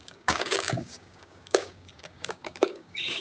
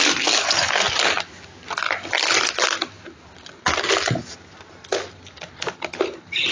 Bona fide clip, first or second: second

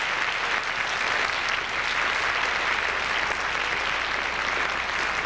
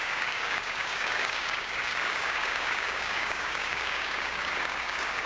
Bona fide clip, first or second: first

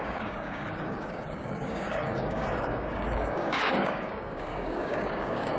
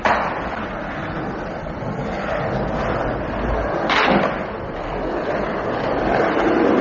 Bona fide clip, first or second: second